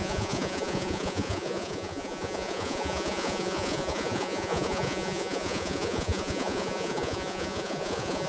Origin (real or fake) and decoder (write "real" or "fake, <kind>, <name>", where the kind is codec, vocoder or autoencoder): fake, vocoder, Vocos